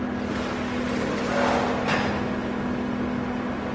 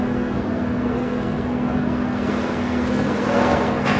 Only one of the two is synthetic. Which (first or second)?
second